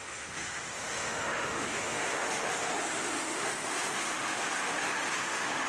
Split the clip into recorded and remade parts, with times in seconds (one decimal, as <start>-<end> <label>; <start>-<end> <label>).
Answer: 0.0-5.7 remade